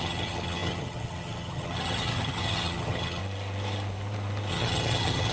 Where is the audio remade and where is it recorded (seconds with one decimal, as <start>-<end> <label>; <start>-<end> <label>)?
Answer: 0.0-3.2 remade; 3.2-4.5 recorded; 4.5-5.3 remade